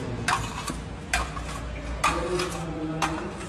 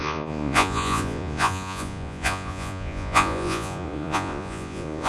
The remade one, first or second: second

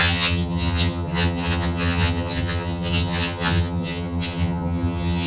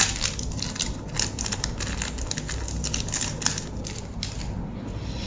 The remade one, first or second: first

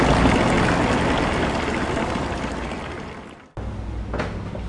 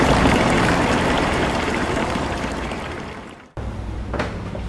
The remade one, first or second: second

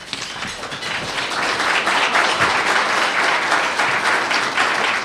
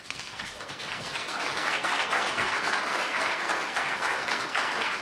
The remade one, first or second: second